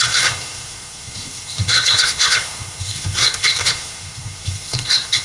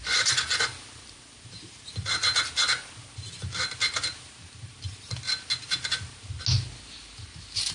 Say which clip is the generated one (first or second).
first